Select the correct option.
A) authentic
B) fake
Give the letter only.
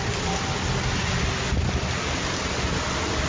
A